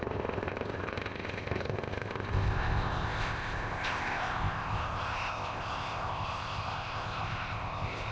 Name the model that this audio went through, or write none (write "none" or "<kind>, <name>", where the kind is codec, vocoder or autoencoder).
codec, ZipCodec